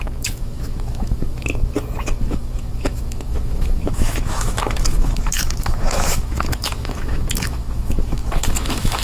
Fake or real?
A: fake